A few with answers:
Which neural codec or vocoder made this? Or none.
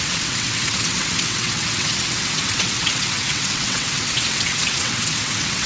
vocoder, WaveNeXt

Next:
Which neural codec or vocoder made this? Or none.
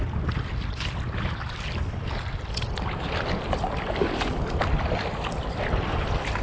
none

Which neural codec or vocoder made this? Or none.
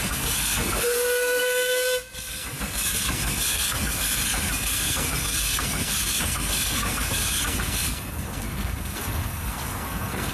codec, SNAC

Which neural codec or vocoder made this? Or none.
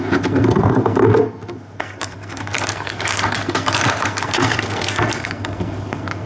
codec, SNAC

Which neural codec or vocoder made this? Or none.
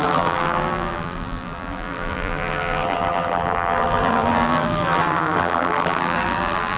vocoder, BigVGAN v2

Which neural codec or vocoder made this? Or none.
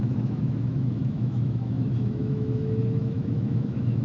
autoencoder, DAC-VAE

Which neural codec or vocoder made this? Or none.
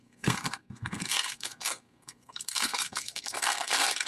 codec, SNAC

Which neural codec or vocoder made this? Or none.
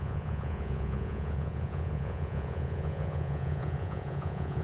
vocoder, Vocos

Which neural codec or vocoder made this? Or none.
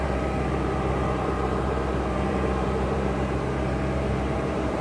vocoder, BigVGAN v2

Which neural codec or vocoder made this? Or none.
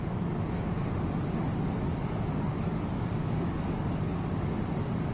codec, DAC